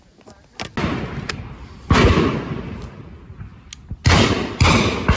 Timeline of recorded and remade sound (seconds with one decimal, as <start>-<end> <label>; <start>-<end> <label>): 0.0-5.2 recorded